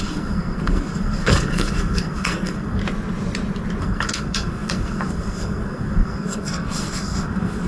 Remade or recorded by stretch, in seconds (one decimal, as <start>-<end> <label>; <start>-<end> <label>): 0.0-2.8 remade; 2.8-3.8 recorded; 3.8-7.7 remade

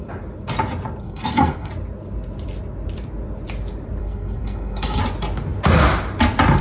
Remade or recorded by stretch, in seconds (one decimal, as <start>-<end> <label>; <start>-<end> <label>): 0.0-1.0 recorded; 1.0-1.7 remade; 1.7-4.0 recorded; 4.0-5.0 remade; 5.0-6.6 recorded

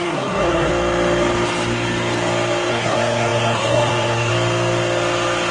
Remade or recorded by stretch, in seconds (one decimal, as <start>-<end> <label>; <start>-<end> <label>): 0.0-0.7 remade; 0.7-2.7 recorded; 2.7-4.3 remade; 4.3-5.5 recorded

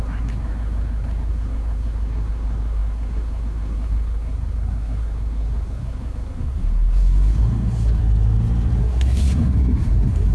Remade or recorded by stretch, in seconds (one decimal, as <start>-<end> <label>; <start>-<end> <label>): 0.0-8.0 remade; 8.0-8.8 recorded; 8.8-10.3 remade

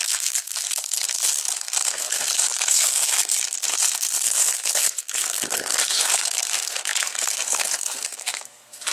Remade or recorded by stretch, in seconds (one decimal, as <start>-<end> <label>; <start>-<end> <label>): 0.0-8.9 remade

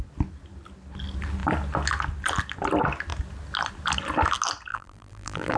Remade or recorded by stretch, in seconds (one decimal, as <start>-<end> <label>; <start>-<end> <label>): 0.0-4.7 recorded; 4.7-5.6 remade

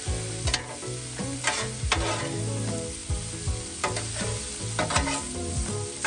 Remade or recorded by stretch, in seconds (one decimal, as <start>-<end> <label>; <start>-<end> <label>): 0.0-6.1 recorded